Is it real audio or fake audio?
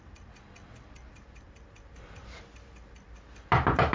real